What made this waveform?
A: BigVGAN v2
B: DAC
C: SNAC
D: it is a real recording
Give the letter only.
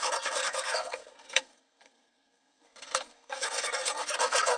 C